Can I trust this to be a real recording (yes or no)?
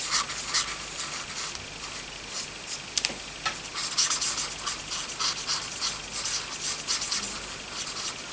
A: yes